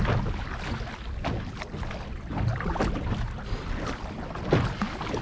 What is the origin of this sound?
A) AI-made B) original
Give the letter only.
B